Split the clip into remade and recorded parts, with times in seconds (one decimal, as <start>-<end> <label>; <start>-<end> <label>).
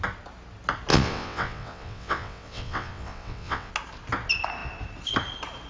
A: 0.0-0.9 recorded; 0.9-3.7 remade; 3.7-5.7 recorded